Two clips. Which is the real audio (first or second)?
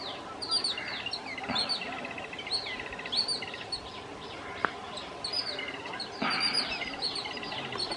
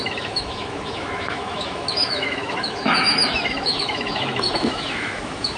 first